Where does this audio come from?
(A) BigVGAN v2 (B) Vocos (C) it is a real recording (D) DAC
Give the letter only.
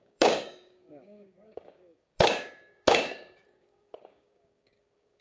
D